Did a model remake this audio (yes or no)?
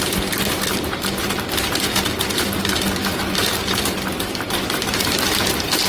yes